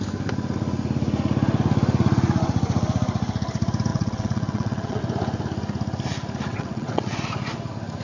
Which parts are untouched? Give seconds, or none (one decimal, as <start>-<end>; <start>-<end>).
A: 0.0-3.9; 5.0-6.5; 7.2-8.0